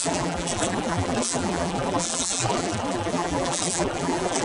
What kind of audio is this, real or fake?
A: fake